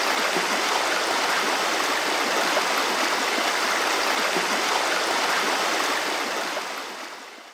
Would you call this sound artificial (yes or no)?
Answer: no